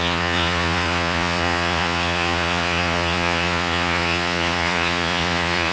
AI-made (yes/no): yes